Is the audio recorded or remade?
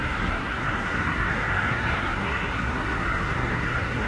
remade